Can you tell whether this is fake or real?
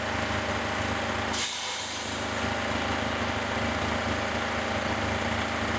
real